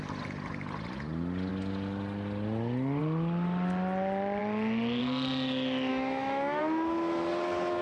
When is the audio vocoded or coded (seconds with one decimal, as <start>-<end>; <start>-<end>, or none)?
5.9-6.6